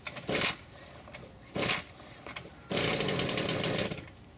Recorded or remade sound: recorded